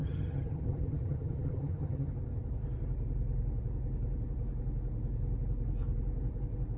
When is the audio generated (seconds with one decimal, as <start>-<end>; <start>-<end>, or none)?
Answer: 0.0-2.1